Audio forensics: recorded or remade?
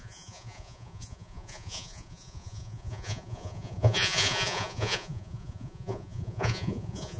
remade